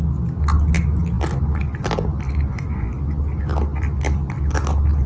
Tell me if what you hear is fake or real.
real